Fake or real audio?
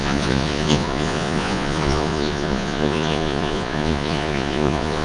fake